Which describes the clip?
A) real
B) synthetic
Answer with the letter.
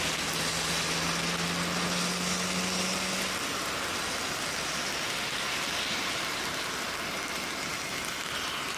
A